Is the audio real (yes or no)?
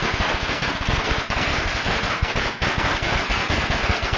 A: no